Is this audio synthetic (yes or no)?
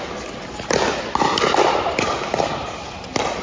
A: no